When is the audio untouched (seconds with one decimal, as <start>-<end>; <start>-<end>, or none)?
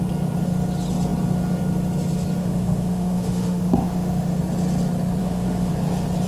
0.0-2.4; 4.4-5.2; 5.7-6.3